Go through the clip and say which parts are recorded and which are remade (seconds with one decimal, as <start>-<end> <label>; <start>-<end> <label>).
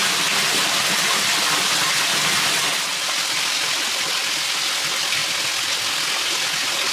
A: 0.0-6.9 recorded